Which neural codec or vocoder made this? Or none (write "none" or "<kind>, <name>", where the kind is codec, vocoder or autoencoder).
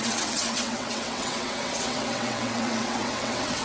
vocoder, WaveNeXt